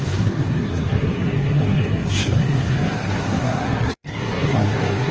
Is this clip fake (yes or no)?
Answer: yes